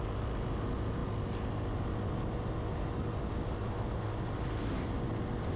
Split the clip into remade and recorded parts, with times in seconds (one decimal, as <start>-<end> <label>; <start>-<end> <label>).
0.0-5.6 recorded